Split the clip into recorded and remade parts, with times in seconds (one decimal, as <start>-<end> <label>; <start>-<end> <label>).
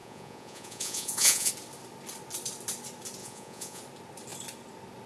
0.0-1.5 remade; 1.5-3.2 recorded; 3.2-3.8 remade; 3.8-5.1 recorded